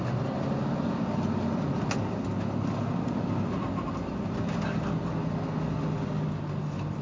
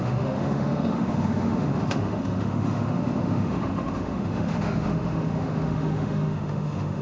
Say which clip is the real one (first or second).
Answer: first